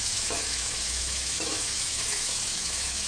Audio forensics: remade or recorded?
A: remade